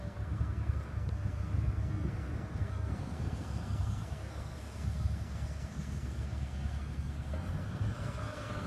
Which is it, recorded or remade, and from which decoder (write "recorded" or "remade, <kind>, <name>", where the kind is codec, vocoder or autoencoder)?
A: remade, codec, SNAC